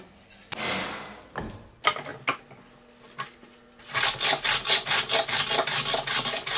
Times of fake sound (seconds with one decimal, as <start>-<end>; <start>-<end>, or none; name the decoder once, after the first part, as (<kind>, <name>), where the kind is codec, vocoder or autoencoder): none